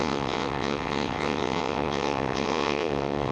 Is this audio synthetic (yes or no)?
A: yes